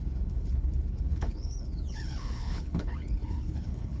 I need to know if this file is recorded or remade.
remade